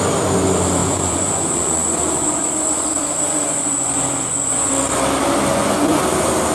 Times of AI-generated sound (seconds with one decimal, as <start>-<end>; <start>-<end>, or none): 0.8-4.7; 5.5-6.0